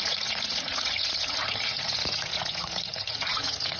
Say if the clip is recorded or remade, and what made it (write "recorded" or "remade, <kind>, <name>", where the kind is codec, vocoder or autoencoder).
remade, vocoder, Vocos